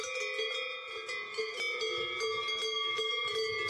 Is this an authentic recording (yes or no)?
yes